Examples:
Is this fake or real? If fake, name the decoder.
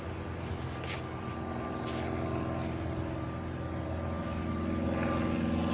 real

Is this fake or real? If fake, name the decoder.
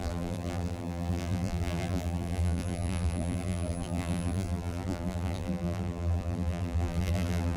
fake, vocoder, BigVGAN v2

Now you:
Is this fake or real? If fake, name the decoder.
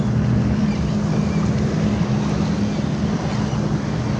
real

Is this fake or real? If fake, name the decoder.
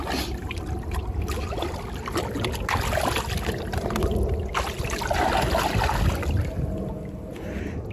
real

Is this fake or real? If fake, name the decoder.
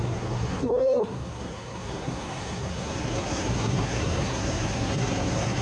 fake, codec, SNAC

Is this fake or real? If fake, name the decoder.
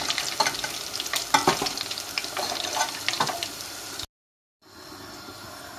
real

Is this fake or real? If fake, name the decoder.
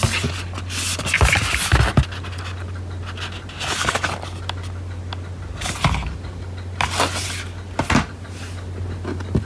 real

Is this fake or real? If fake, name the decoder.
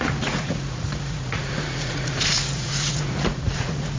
fake, vocoder, Vocos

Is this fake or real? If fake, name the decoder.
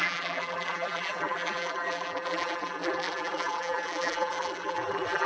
fake, vocoder, BigVGAN v2